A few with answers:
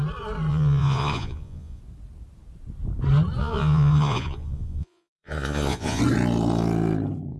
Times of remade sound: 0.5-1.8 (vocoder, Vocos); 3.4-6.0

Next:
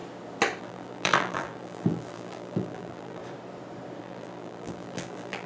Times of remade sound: 0.6-3.2 (vocoder, BigVGAN v2); 4.0-5.5